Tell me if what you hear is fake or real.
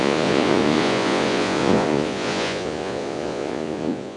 fake